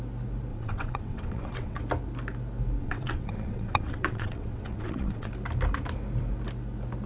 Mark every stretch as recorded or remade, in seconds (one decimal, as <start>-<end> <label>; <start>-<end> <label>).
0.0-0.5 recorded; 0.5-1.8 remade; 1.8-2.8 recorded; 2.8-5.3 remade; 5.3-7.1 recorded